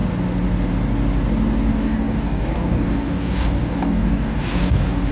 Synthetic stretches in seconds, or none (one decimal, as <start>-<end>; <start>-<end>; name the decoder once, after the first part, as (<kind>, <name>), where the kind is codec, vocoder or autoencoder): 1.7-5.1 (codec, DAC)